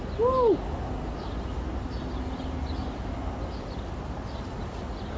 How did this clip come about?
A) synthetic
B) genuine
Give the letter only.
B